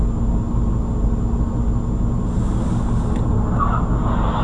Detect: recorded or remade recorded